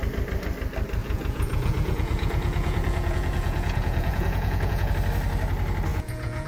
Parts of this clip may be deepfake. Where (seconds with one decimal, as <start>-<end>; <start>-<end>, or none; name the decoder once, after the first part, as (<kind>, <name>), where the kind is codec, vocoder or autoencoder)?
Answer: 1.0-4.9 (vocoder, Vocos); 5.9-6.5

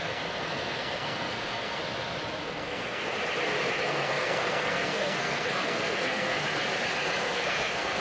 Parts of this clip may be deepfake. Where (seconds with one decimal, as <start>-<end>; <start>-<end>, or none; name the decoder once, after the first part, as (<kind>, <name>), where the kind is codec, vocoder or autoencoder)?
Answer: 0.0-1.8 (codec, SNAC); 2.4-3.0; 3.8-6.4; 7.2-8.0

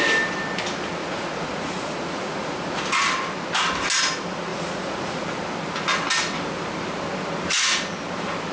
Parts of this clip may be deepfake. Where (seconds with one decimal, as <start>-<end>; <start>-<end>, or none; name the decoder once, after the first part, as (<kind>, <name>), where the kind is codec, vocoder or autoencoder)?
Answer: 1.0-2.8 (vocoder, Vocos); 4.5-5.2

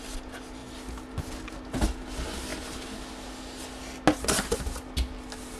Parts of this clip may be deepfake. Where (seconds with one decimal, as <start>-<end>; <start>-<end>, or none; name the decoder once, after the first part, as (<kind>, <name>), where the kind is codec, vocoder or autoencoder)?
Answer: none

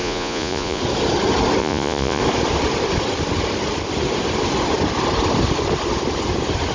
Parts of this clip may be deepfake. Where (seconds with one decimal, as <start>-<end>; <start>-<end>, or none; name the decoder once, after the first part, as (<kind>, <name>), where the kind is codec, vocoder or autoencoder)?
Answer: 0.0-0.8 (vocoder, Vocos); 1.6-2.2

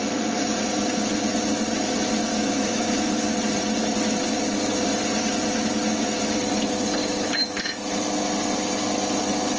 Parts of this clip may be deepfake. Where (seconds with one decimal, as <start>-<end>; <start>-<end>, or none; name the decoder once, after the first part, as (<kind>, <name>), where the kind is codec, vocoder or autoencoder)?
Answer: 2.3-3.1 (autoencoder, DAC-VAE); 7.0-7.6